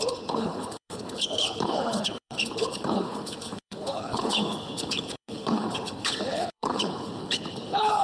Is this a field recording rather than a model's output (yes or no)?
no